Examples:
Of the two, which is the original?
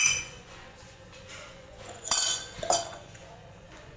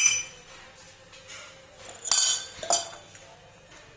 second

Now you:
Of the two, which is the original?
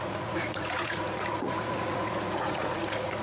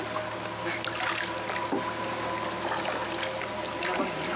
second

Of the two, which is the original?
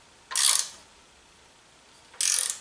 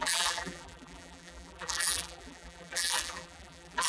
first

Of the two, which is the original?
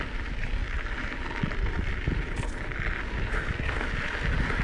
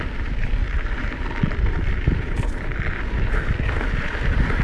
first